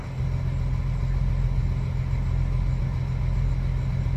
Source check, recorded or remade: recorded